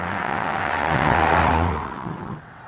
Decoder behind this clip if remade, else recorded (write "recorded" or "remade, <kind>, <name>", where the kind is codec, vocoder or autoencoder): remade, vocoder, WaveNeXt